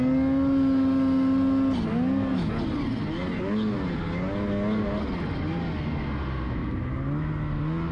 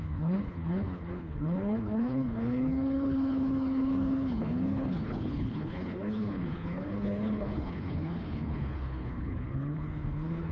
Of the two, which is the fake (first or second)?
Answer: second